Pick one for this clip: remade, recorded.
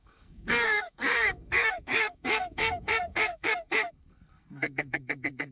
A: remade